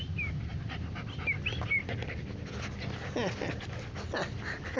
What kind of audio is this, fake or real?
real